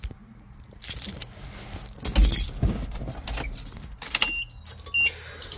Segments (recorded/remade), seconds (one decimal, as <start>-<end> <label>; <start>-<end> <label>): 0.0-5.6 recorded